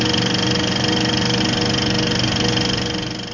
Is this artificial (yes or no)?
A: no